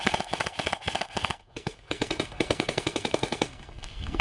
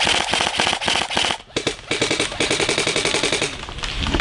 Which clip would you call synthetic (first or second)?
first